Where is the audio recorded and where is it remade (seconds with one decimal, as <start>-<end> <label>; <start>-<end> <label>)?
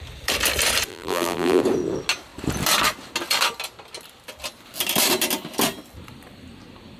0.0-0.9 recorded; 0.9-1.6 remade; 1.6-7.0 recorded